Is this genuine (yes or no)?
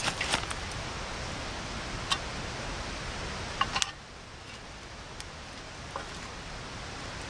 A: yes